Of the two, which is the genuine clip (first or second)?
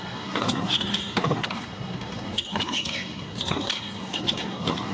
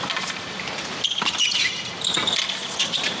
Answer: second